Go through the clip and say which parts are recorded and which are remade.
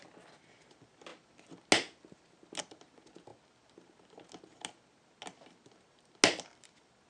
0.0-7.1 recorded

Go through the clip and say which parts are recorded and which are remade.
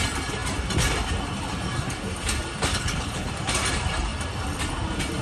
0.0-2.7 recorded; 2.7-3.3 remade; 3.3-5.2 recorded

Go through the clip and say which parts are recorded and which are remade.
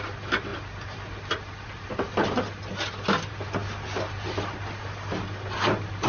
0.0-6.1 recorded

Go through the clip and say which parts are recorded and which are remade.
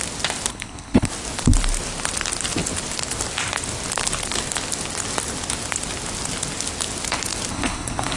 0.0-0.5 recorded; 0.5-1.1 remade; 1.1-7.5 recorded; 7.5-8.2 remade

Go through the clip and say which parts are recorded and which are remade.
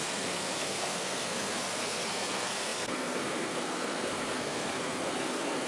0.0-5.7 remade